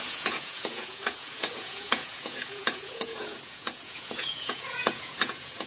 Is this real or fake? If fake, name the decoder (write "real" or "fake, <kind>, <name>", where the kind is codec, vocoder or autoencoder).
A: fake, vocoder, Vocos